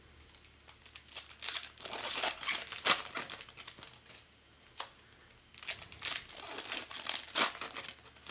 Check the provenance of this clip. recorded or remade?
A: recorded